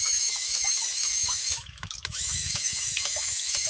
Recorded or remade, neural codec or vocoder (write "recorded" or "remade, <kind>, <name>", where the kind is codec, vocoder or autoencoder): remade, autoencoder, DAC-VAE